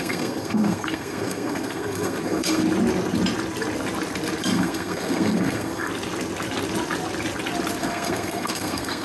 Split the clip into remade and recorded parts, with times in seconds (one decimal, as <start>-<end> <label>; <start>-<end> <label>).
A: 0.0-2.6 remade; 2.6-4.4 recorded; 4.4-5.9 remade; 5.9-7.8 recorded; 7.8-9.0 remade